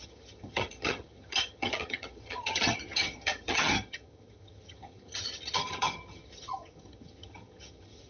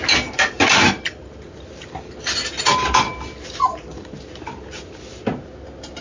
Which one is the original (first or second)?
second